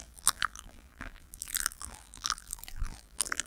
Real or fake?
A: fake